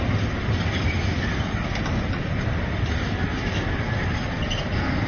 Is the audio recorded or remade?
recorded